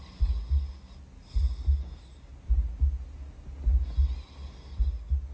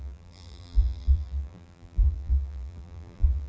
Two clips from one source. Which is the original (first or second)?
first